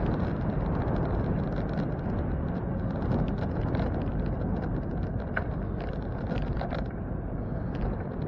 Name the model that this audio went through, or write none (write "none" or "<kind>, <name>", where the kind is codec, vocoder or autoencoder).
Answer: none